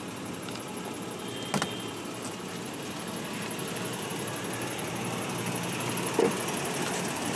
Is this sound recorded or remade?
recorded